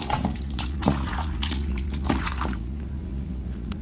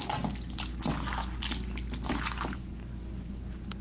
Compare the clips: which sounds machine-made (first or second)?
first